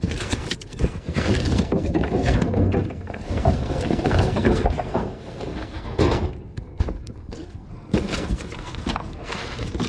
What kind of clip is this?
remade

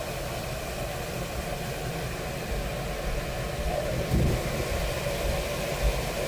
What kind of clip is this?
recorded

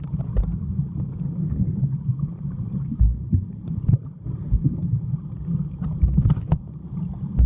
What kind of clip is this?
recorded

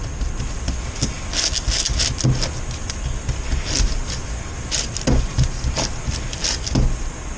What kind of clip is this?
recorded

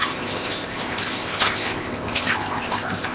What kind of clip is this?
remade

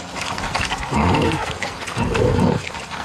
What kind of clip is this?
remade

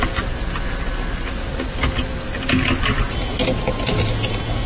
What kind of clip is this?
recorded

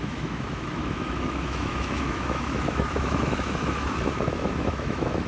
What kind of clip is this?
remade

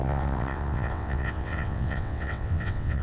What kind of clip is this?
remade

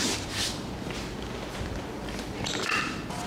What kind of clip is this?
recorded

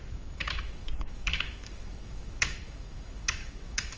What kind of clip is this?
remade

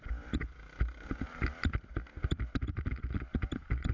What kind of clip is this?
recorded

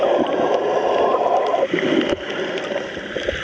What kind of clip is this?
recorded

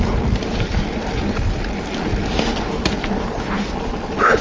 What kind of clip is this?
recorded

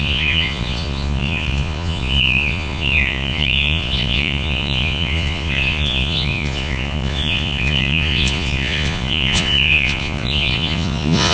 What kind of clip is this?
remade